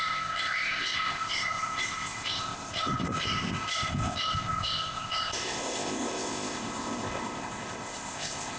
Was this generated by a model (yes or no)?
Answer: yes